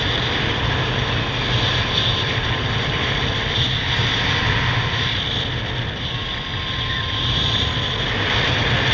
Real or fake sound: real